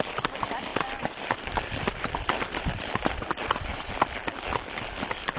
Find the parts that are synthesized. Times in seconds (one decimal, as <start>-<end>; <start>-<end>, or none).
0.7-3.9